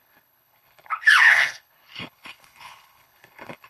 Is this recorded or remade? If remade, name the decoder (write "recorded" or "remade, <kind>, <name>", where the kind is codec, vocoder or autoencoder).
remade, codec, HILCodec